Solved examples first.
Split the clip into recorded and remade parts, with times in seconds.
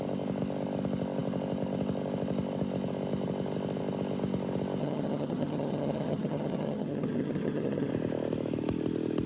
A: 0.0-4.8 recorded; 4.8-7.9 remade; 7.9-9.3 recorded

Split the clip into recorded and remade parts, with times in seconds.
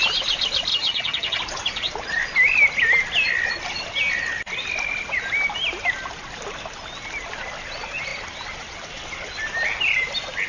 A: 0.0-0.7 recorded; 0.7-1.4 remade; 1.4-10.5 recorded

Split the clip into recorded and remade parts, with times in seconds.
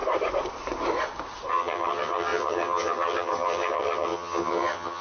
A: 0.0-1.5 recorded; 1.5-5.0 remade